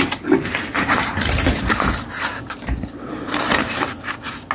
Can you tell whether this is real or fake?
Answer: real